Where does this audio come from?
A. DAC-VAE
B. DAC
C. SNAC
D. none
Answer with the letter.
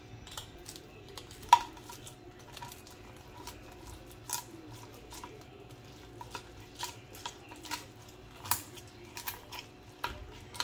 D